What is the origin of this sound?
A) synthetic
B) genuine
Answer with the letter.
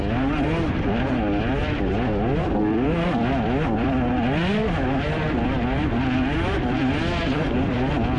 B